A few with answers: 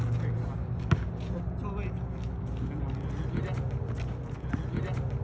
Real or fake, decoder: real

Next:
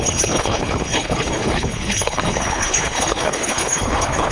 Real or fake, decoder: fake, codec, HILCodec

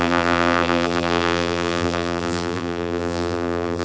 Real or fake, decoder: fake, vocoder, BigVGAN v2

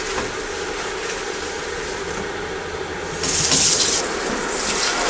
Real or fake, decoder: real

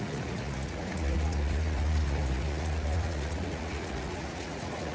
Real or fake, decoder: fake, vocoder, Vocos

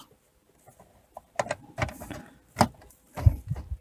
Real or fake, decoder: real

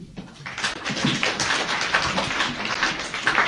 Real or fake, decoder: real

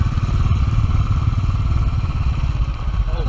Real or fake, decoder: fake, vocoder, BigVGAN v2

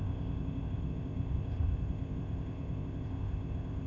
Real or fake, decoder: fake, codec, ZipCodec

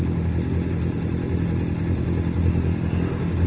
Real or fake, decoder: real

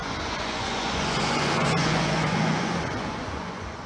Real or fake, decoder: fake, vocoder, Vocos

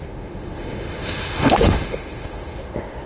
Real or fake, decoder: fake, autoencoder, DAC-VAE